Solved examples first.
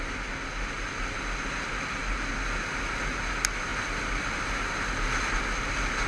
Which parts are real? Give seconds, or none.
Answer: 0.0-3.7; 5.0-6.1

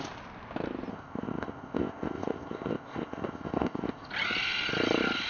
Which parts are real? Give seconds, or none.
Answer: 0.0-0.9; 4.1-5.3

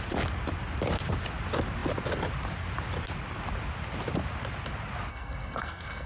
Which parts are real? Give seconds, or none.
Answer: 0.0-5.1

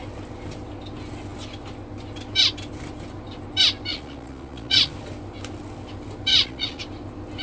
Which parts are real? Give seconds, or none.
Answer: 0.0-3.9; 4.9-6.3; 6.8-7.4

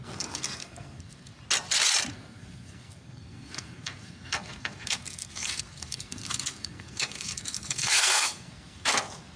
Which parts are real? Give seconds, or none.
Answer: 1.3-2.1

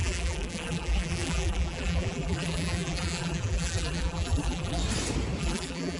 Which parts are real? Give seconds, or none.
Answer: 4.8-5.4